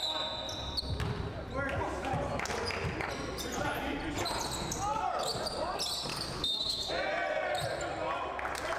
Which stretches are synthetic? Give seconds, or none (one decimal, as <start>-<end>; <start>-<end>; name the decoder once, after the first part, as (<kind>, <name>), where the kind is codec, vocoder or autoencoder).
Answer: 6.1-6.9 (codec, DAC)